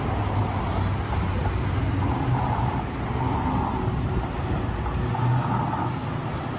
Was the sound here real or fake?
real